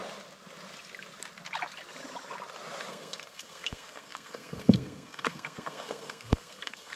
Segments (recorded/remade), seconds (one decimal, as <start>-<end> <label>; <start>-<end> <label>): 0.0-2.9 recorded; 2.9-7.0 remade